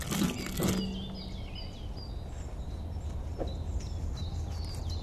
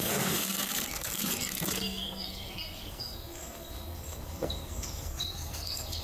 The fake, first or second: second